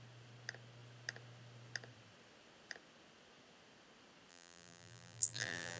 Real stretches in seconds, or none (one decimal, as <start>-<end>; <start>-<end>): 0.0-4.3